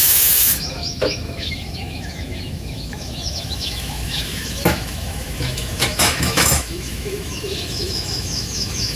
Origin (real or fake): fake